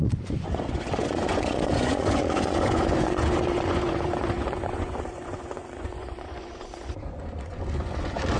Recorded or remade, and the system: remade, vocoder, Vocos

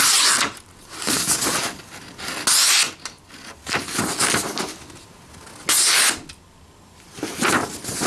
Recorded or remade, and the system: recorded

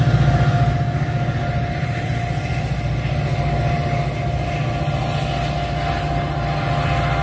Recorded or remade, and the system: recorded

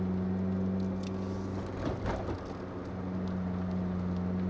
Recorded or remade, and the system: recorded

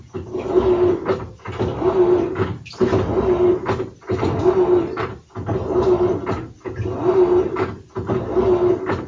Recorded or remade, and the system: recorded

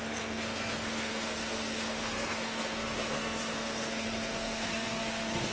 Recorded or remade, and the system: remade, codec, SNAC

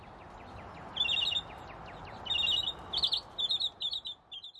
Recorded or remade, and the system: recorded